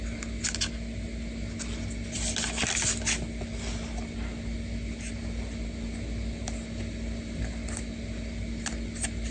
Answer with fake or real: real